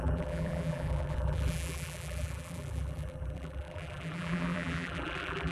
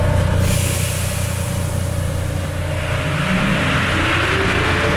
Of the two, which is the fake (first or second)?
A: first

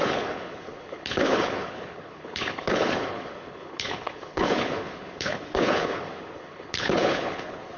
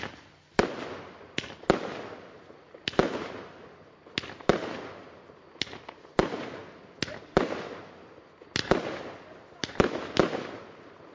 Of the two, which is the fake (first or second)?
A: first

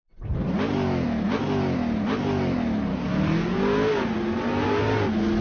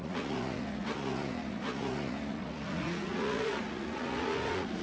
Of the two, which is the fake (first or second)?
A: second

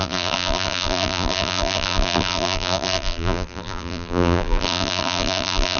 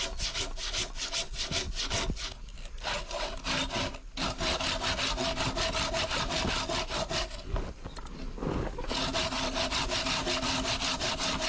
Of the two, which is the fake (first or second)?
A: first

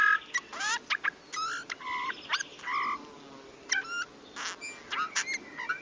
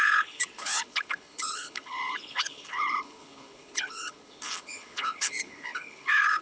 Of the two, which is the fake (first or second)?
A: second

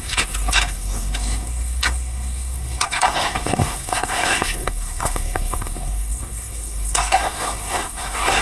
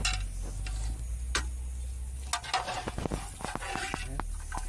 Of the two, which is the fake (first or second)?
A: first